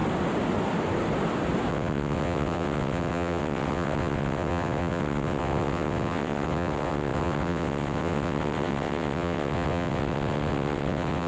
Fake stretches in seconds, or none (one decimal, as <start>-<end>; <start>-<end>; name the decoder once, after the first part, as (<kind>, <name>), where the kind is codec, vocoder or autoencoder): 1.7-11.3 (vocoder, WaveNeXt)